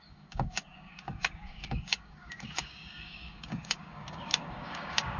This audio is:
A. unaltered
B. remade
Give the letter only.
B